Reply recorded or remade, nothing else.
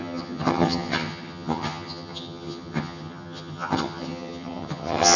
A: remade